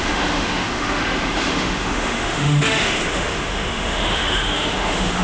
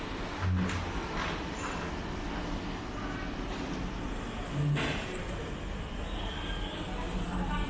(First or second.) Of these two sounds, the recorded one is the second